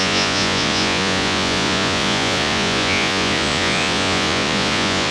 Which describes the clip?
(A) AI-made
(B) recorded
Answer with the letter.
A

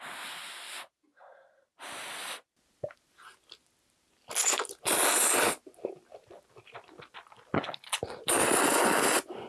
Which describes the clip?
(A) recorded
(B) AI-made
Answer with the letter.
A